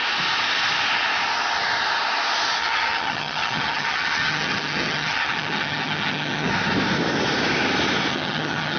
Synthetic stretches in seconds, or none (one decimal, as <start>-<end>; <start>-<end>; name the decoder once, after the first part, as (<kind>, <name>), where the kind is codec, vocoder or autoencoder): 2.6-6.5 (vocoder, HiFi-GAN); 8.1-8.8